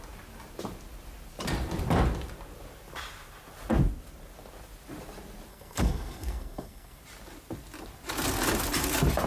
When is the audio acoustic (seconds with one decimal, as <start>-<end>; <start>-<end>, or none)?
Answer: 0.0-5.5; 7.0-9.3